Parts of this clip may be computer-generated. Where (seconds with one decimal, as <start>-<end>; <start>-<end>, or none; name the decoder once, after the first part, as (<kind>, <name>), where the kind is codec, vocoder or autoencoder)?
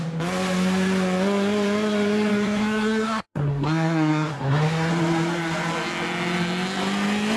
2.3-4.9 (codec, SNAC)